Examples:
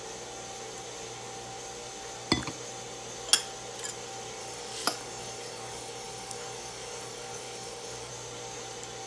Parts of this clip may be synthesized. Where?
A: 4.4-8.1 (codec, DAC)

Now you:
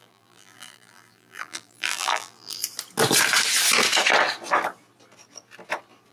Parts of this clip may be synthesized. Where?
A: 0.0-2.6 (vocoder, BigVGAN v2)

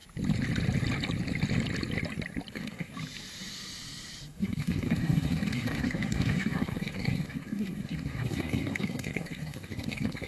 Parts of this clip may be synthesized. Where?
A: 2.5-2.9 (codec, SNAC); 4.2-10.3